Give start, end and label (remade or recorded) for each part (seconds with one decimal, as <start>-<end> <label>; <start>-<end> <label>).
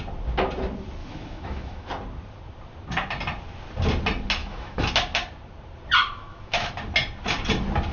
0.0-1.0 recorded; 1.0-1.9 remade; 1.9-4.4 recorded; 4.4-4.9 remade; 4.9-6.0 recorded; 6.0-6.7 remade; 6.7-7.9 recorded